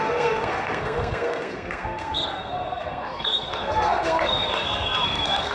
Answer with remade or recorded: remade